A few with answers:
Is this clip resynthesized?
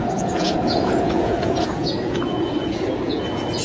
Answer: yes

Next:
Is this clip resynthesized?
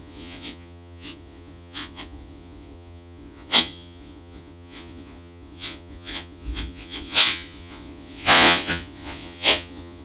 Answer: yes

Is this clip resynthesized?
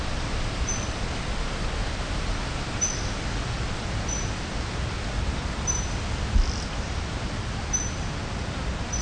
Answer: no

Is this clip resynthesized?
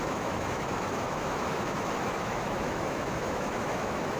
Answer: yes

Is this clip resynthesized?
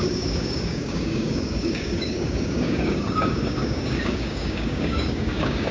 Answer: yes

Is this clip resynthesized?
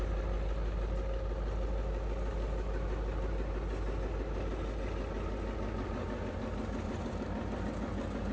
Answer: no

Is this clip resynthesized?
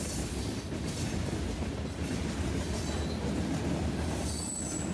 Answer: no